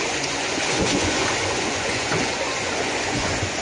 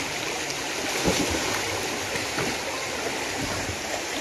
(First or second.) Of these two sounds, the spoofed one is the first